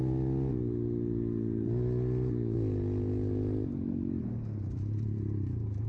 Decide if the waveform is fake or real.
real